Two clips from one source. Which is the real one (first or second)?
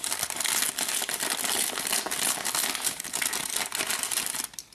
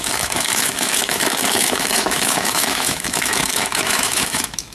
first